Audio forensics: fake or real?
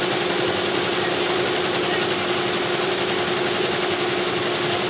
real